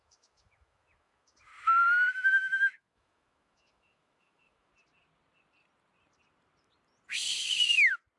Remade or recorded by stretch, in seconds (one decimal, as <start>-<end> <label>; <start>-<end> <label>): 0.0-1.5 remade; 1.5-2.1 recorded; 2.1-4.7 remade; 4.7-8.2 recorded